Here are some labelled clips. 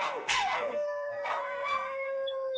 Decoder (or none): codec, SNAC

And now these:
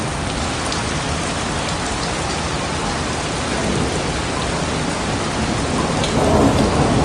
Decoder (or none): none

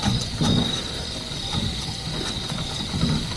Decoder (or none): vocoder, Vocos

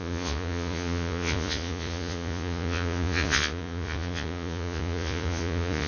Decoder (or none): vocoder, Vocos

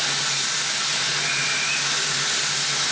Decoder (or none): none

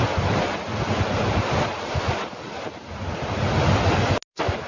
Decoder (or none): none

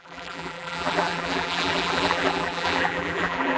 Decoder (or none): vocoder, BigVGAN v2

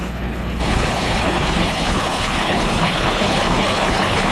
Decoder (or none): codec, HILCodec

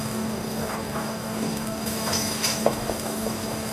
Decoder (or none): codec, DAC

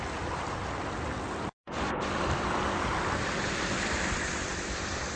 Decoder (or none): none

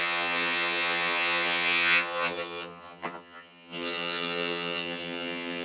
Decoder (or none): vocoder, HiFi-GAN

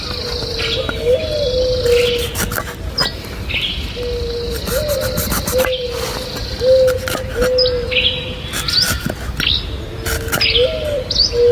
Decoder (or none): none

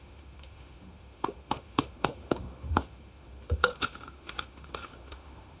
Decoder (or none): autoencoder, DAC-VAE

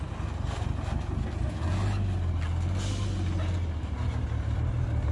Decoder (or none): none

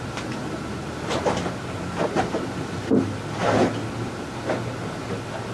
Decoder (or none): none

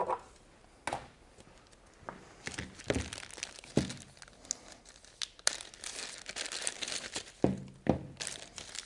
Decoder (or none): none